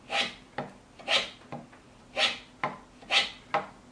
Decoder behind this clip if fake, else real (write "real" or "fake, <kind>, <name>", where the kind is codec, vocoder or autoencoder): real